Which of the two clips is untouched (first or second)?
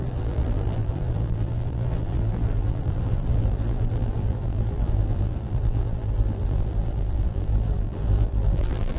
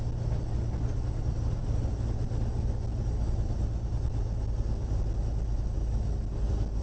second